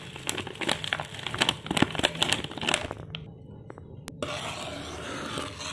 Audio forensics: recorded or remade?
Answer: recorded